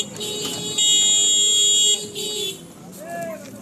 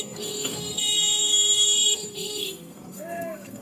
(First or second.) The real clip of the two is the first